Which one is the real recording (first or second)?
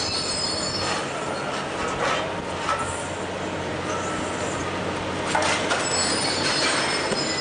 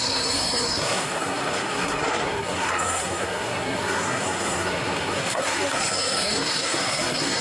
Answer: first